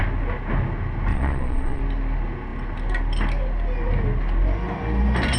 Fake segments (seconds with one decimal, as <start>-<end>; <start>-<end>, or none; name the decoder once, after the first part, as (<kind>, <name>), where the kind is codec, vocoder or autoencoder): 1.1-1.8 (vocoder, Vocos)